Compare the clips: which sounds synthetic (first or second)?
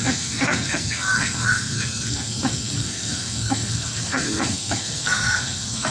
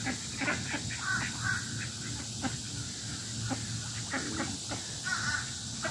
first